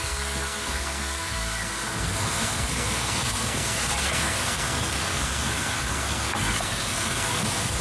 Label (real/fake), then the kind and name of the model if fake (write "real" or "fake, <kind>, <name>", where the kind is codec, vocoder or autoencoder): fake, codec, SNAC